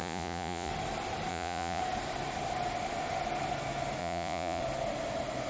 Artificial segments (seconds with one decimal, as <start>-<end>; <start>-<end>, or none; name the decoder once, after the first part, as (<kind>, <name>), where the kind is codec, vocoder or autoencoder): 0.0-0.7 (vocoder, Vocos); 1.3-1.8; 4.0-4.6